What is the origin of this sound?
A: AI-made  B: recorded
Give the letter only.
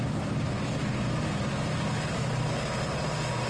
B